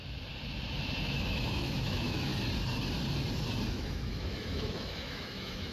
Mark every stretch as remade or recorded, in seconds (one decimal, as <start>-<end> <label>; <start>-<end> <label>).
0.0-1.0 recorded; 1.0-2.3 remade; 2.3-3.7 recorded; 3.7-5.7 remade

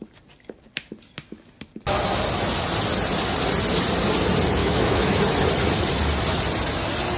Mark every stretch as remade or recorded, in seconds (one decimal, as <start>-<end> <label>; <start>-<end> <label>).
0.0-4.6 recorded; 4.6-5.2 remade; 5.2-7.2 recorded